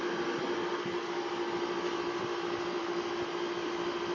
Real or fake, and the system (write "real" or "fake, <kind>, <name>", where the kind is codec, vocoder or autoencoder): fake, vocoder, BigVGAN v2